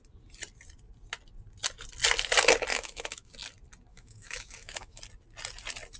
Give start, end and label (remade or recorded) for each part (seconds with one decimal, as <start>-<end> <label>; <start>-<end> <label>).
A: 0.0-2.7 recorded; 2.7-3.3 remade; 3.3-3.9 recorded; 3.9-5.0 remade; 5.0-6.0 recorded